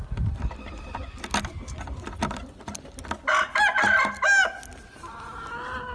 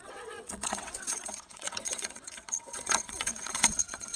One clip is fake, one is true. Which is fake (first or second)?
second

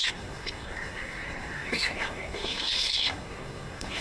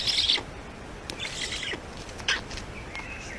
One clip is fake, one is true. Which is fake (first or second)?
first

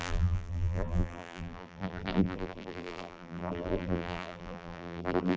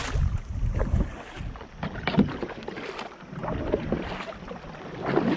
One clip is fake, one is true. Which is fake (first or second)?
first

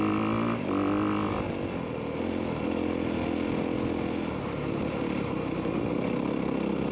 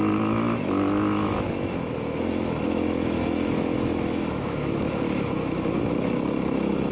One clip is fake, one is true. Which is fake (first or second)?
second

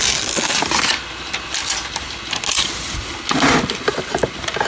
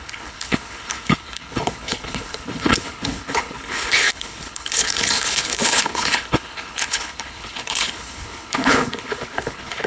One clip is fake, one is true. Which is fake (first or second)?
second